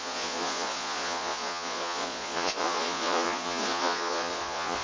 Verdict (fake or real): fake